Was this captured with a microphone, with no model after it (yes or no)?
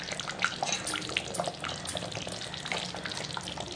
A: yes